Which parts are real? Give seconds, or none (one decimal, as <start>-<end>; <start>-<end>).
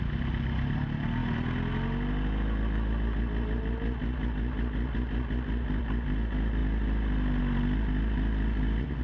0.0-9.0